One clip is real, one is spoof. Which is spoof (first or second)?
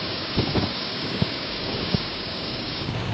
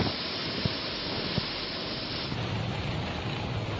first